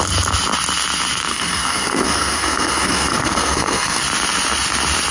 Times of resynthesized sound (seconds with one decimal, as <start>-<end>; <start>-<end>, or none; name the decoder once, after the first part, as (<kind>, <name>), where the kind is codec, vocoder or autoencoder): 1.3-4.0 (codec, SNAC)